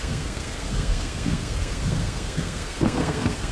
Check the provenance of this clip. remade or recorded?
remade